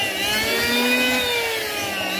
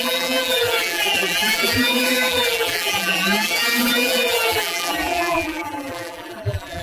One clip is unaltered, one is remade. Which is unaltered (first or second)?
first